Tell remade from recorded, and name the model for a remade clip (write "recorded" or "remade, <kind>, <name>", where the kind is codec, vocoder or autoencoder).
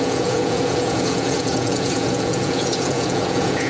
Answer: remade, vocoder, Vocos